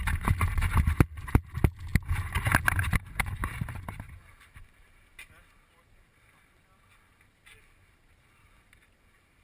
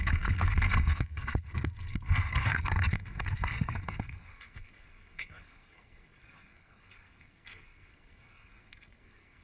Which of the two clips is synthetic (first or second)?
second